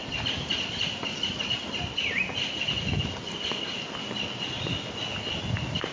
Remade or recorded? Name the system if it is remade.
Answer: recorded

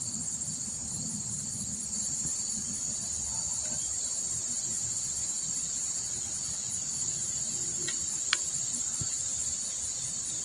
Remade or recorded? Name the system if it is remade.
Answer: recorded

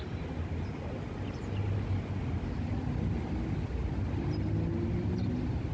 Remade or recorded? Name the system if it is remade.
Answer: recorded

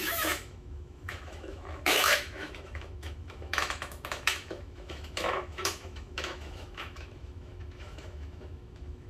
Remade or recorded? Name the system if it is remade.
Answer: remade, autoencoder, DAC-VAE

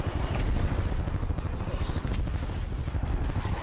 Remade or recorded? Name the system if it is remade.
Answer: recorded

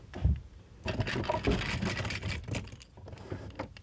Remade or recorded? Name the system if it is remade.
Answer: recorded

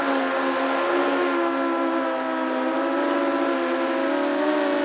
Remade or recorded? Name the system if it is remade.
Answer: recorded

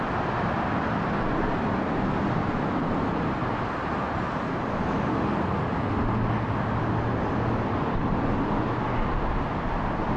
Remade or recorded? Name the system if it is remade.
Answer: recorded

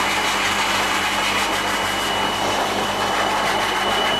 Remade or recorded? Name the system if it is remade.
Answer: recorded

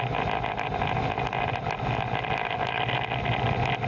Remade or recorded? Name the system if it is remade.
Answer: recorded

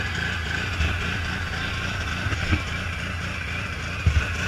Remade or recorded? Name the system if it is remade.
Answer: recorded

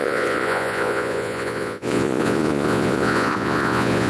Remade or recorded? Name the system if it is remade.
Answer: remade, vocoder, Vocos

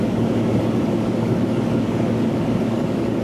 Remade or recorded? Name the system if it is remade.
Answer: remade, codec, DAC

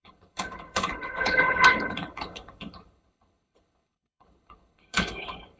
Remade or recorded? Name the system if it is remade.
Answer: remade, codec, HILCodec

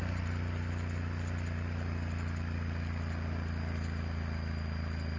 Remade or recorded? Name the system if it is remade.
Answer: recorded